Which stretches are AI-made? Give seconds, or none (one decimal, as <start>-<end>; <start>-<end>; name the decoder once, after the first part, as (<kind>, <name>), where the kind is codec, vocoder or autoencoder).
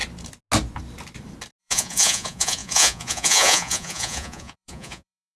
1.6-5.4 (vocoder, Vocos)